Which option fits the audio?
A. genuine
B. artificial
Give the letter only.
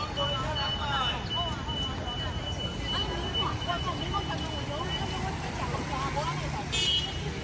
A